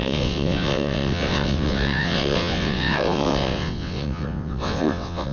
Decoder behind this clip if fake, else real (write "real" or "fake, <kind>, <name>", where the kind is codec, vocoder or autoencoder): fake, vocoder, WaveNeXt